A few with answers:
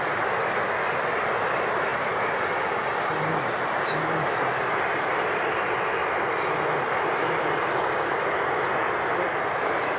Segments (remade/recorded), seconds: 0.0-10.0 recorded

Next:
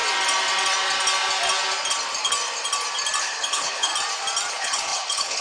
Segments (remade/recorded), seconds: 0.0-3.2 recorded; 3.2-3.9 remade; 3.9-4.5 recorded; 4.5-5.4 remade

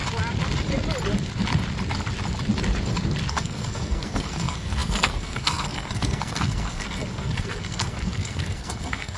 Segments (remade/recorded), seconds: 0.0-3.3 recorded; 3.3-9.2 remade